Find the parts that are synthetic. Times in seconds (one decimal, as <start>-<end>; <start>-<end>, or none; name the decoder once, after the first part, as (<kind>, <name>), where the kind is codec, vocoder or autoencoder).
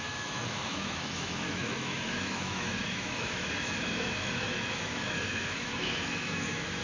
0.0-6.8 (autoencoder, DAC-VAE)